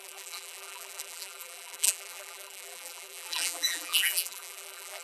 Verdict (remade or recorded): remade